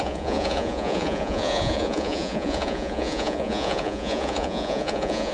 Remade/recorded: remade